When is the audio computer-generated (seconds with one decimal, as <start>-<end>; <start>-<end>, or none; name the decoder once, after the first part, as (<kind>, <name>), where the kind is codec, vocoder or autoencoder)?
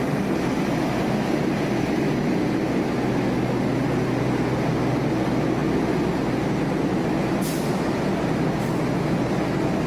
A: none